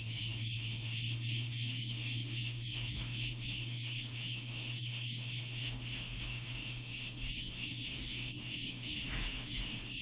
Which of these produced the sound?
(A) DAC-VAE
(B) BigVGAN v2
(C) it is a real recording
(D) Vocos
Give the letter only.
A